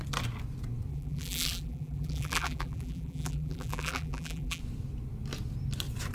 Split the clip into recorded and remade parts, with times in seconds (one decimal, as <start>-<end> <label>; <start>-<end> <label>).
0.0-0.9 recorded; 0.9-4.6 remade; 4.6-6.1 recorded